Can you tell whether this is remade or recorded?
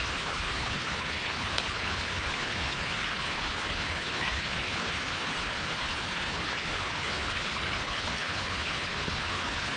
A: remade